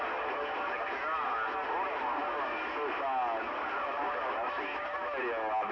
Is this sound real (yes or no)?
yes